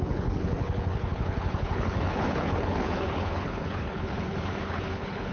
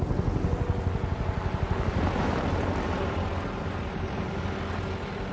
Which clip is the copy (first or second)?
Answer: first